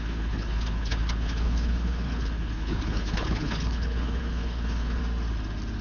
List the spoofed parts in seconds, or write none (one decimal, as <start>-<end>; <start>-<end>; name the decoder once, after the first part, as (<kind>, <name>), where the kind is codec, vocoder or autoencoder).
0.0-5.0 (codec, HILCodec)